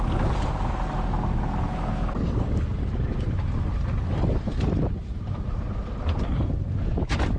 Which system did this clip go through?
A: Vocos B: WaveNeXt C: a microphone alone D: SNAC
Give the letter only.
C